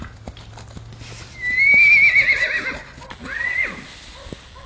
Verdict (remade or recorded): recorded